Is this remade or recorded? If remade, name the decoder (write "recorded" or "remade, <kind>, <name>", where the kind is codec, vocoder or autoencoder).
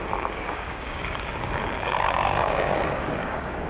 remade, codec, DAC